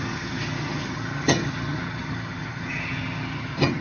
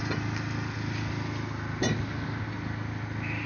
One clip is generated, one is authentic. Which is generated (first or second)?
first